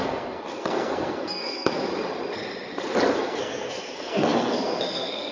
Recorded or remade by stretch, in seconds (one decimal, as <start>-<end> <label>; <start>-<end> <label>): 0.0-1.9 remade; 1.9-3.2 recorded; 3.2-5.3 remade